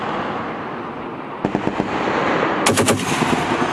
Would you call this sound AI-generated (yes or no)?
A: no